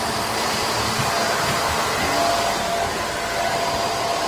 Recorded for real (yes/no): yes